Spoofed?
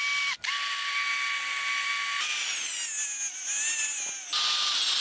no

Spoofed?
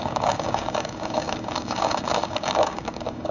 yes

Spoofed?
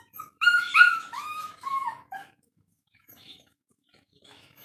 yes